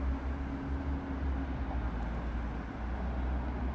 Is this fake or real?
real